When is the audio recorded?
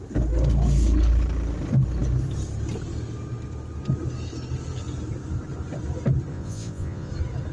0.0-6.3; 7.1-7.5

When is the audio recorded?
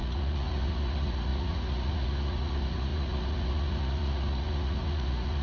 none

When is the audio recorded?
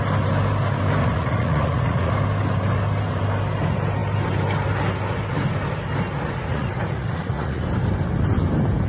0.0-1.0; 2.1-6.5; 7.6-8.9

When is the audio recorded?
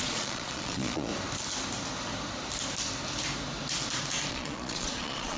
1.1-4.3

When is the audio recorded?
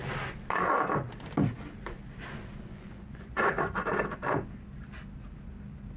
0.0-2.7; 3.5-6.0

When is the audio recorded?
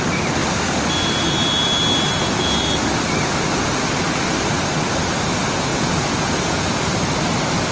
0.0-5.7; 6.7-7.7